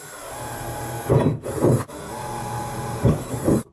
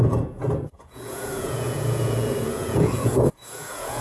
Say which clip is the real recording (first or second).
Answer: first